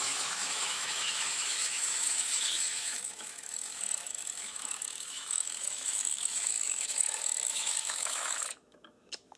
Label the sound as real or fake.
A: fake